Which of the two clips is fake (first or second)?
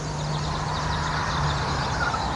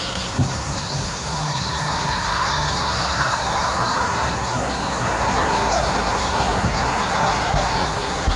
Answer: second